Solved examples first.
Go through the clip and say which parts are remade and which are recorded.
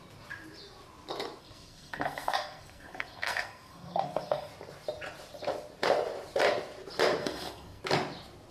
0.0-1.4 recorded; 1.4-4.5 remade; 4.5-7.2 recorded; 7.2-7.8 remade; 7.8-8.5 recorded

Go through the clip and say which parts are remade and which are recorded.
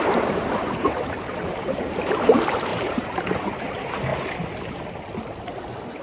0.0-4.1 remade; 4.1-6.0 recorded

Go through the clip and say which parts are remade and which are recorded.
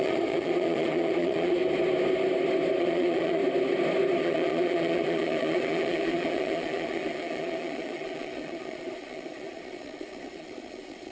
0.0-1.6 remade; 1.6-2.8 recorded; 2.8-3.4 remade; 3.4-4.2 recorded; 4.2-11.1 remade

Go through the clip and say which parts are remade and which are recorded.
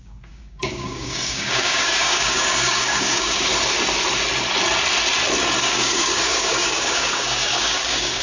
0.0-3.5 remade; 3.5-5.6 recorded; 5.6-8.2 remade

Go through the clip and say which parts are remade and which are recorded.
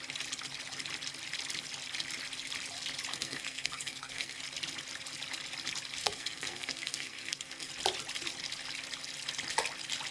0.0-3.1 recorded; 3.1-4.4 remade; 4.4-6.0 recorded; 6.0-7.7 remade; 7.7-10.1 recorded